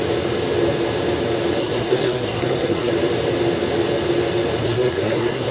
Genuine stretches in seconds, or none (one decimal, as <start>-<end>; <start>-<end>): 0.0-1.6; 2.9-4.6

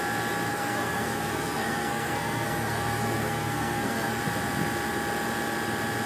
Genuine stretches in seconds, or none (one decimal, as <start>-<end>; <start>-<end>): 0.0-0.5; 4.2-6.1

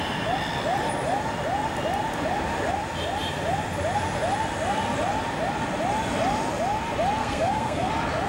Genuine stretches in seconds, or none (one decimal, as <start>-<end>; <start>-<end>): 0.0-7.2; 7.9-8.3

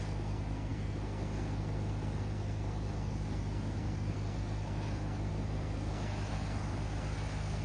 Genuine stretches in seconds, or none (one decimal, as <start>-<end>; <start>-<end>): none

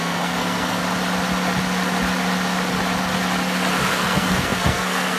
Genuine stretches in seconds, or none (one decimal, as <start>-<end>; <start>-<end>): 0.8-3.8

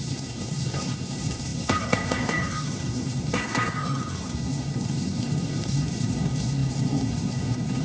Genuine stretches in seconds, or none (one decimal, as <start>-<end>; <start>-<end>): none

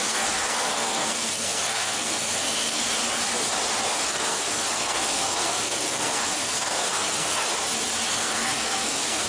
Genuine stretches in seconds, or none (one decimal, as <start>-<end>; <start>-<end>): 3.0-4.0; 7.5-8.1